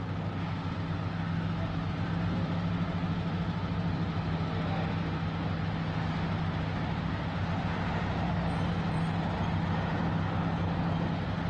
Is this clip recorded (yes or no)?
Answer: yes